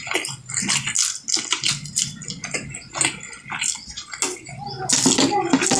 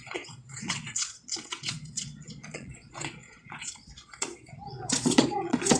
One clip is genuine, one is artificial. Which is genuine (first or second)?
first